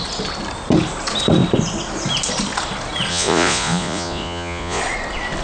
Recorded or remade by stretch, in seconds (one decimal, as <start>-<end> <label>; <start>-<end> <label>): 0.0-3.1 recorded; 3.1-4.8 remade; 4.8-5.4 recorded